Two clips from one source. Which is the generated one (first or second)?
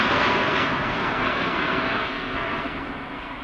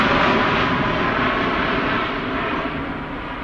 first